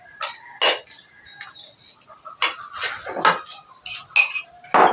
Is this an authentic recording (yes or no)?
yes